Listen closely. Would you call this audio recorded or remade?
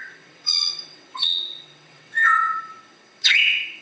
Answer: remade